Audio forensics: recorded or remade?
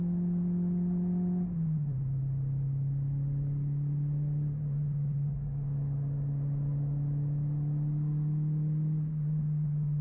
recorded